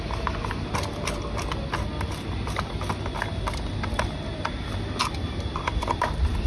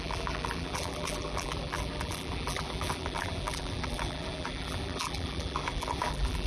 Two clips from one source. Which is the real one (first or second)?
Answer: first